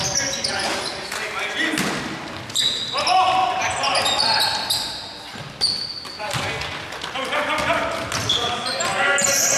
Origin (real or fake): real